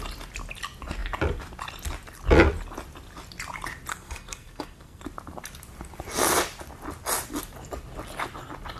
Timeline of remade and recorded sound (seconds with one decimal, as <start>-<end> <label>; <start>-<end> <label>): 0.0-3.9 recorded; 3.9-5.0 remade; 5.0-8.8 recorded